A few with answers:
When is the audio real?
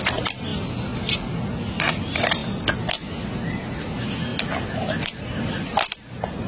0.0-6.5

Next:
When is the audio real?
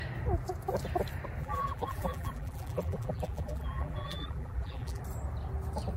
0.0-1.4; 5.0-6.0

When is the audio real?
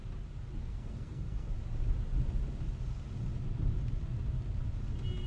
0.0-0.6; 1.5-5.3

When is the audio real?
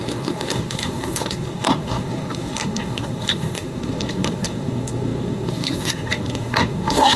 none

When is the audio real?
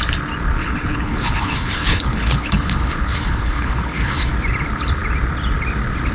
0.0-0.6; 4.3-6.1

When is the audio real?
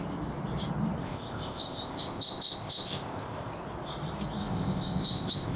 0.0-1.0; 3.5-4.4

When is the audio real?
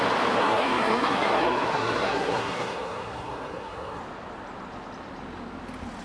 0.0-0.4; 4.0-6.0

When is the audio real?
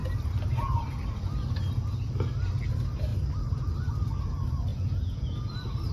0.0-4.7; 5.5-5.9